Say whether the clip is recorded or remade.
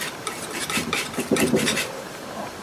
remade